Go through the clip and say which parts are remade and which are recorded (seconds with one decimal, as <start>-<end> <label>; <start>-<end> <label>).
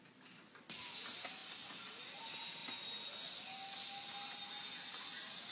0.0-5.5 recorded